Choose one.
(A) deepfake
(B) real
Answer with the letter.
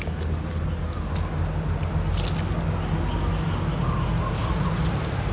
B